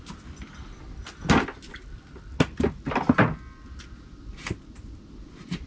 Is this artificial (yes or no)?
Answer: no